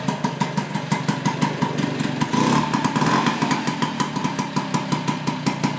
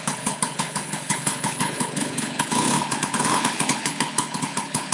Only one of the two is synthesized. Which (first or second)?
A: second